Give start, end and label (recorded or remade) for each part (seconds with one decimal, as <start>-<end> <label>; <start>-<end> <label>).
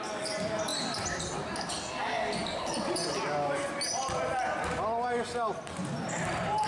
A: 0.0-0.7 recorded; 0.7-1.3 remade; 1.3-5.8 recorded; 5.8-6.3 remade; 6.3-6.7 recorded